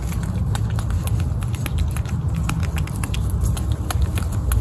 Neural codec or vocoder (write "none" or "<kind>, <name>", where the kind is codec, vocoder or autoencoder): none